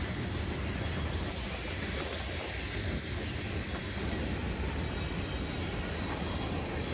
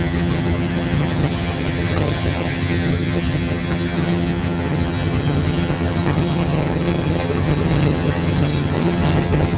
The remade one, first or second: second